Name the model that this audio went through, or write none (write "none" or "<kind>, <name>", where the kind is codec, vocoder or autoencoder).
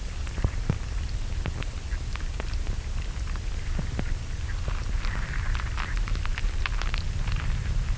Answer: none